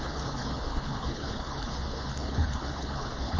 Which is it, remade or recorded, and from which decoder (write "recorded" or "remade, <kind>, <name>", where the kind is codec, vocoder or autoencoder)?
remade, codec, HILCodec